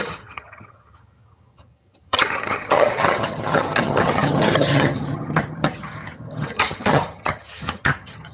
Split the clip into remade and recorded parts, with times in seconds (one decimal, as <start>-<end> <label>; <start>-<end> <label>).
0.0-8.3 remade